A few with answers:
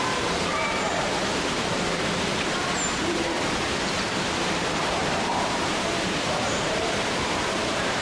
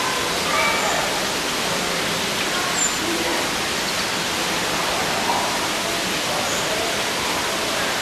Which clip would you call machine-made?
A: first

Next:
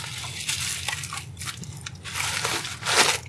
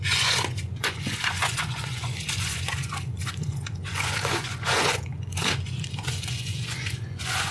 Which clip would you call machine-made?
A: second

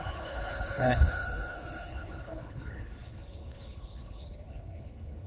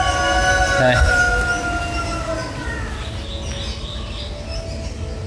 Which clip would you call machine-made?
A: first